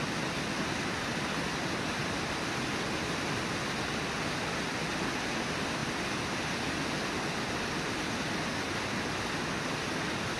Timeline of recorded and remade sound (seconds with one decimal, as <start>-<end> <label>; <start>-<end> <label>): 0.0-10.4 recorded